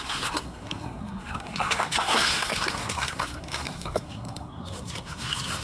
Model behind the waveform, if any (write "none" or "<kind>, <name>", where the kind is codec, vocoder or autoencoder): codec, SNAC